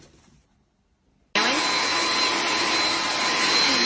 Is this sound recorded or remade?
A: recorded